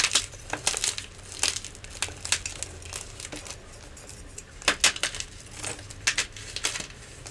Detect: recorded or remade recorded